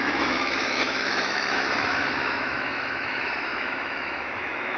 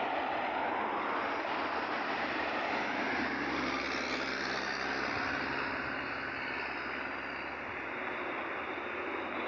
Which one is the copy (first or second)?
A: first